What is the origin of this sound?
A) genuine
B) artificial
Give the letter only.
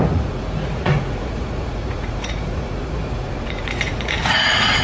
B